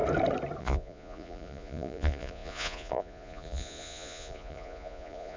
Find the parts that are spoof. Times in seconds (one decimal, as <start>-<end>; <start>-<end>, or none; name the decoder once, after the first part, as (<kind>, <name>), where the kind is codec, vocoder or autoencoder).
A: 0.6-5.4 (vocoder, Vocos)